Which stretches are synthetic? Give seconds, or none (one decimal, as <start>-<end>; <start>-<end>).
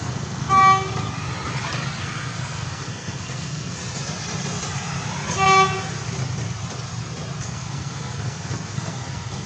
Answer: 0.0-0.6; 2.0-3.8; 7.4-9.5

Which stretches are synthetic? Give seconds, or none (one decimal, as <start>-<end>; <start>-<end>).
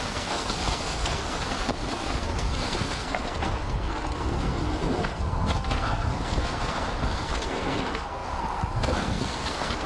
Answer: 0.0-9.9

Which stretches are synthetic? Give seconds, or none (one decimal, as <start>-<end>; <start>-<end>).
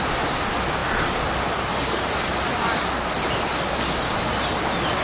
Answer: none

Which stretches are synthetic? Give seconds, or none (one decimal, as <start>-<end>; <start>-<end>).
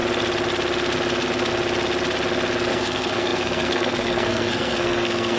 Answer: 2.7-5.4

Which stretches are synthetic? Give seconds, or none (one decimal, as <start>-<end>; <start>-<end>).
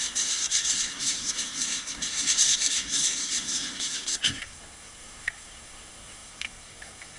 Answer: 0.0-7.2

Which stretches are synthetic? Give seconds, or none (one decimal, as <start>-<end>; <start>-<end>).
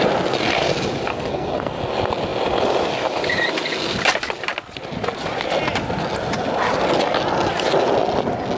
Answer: 1.1-1.8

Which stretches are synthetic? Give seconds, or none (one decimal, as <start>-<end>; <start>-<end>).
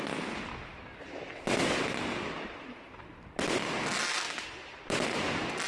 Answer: none